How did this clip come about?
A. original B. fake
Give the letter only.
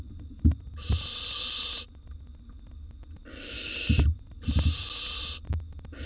A